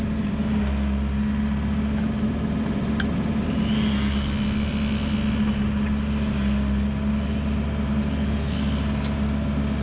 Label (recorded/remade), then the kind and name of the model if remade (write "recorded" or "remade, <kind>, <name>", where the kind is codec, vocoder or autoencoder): recorded